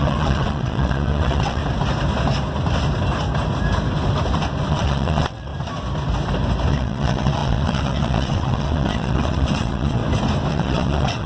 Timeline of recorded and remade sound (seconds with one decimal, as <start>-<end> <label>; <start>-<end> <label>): 0.0-1.6 remade; 1.6-4.7 recorded; 4.7-5.5 remade; 5.5-6.7 recorded; 6.7-10.0 remade; 10.0-10.5 recorded; 10.5-11.3 remade